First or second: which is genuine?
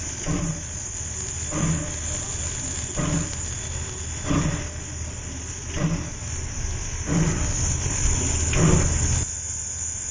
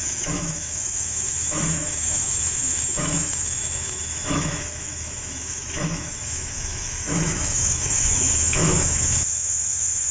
first